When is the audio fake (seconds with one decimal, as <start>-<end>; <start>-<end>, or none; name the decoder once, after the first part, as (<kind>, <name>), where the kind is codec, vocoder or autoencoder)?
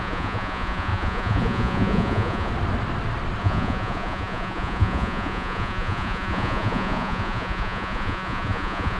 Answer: 0.0-2.5 (vocoder, Vocos); 3.4-9.0